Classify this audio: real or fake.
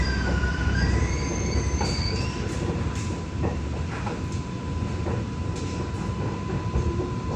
fake